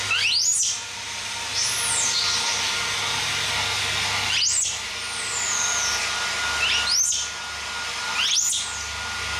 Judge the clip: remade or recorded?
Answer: recorded